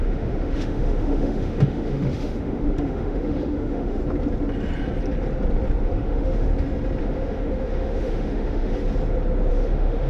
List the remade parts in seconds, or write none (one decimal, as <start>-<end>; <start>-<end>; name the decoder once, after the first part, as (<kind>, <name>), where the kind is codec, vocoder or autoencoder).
0.0-4.0 (autoencoder, DAC-VAE); 5.8-6.5; 7.0-8.8; 9.5-10.1